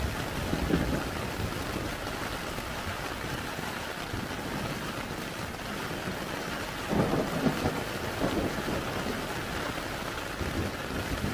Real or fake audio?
real